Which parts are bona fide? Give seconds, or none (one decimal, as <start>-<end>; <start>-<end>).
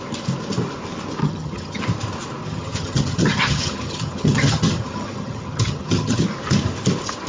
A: 0.0-1.2; 1.8-2.4; 6.2-7.3